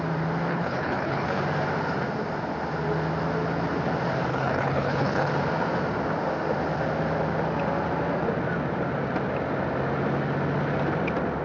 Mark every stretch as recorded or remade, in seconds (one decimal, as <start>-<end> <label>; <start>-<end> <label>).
0.0-0.5 recorded; 0.5-1.4 remade; 1.4-4.3 recorded; 4.3-5.3 remade; 5.3-11.4 recorded